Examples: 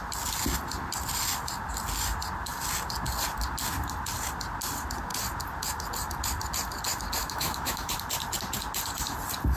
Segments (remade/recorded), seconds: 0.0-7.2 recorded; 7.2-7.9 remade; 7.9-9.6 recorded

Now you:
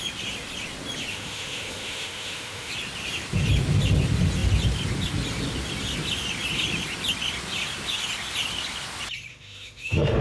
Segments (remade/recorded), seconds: 0.0-1.1 recorded; 1.1-2.7 remade; 2.7-9.3 recorded; 9.3-10.2 remade

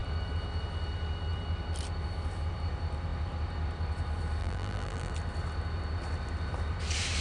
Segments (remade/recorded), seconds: 0.0-4.4 recorded; 4.4-5.1 remade; 5.1-7.2 recorded

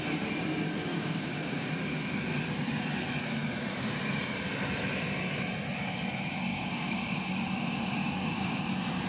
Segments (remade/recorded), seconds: 0.0-0.9 recorded; 0.9-1.7 remade; 1.7-6.5 recorded; 6.5-8.6 remade; 8.6-9.1 recorded

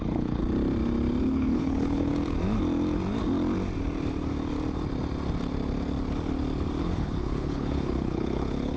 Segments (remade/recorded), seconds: 0.0-0.4 remade; 0.4-1.2 recorded; 1.2-2.1 remade; 2.1-6.8 recorded; 6.8-8.8 remade

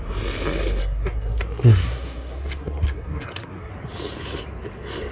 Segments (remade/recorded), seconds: 0.0-0.8 recorded; 0.8-3.7 remade; 3.7-5.1 recorded

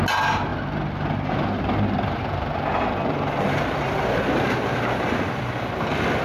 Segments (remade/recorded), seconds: 0.0-6.2 recorded

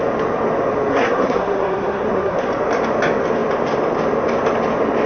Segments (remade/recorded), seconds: 0.0-0.9 recorded; 0.9-2.5 remade; 2.5-5.1 recorded